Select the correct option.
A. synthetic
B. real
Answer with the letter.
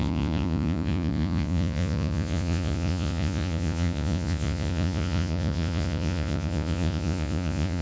A